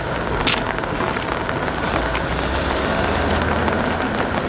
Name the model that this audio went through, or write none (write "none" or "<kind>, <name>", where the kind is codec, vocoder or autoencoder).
none